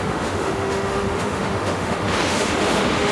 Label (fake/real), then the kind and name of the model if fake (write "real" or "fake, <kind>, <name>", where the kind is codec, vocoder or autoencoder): fake, autoencoder, DAC-VAE